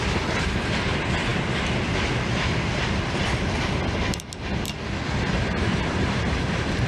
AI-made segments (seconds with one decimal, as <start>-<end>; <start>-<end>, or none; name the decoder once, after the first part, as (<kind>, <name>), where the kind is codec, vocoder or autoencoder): 0.0-1.3 (vocoder, BigVGAN v2); 5.4-6.9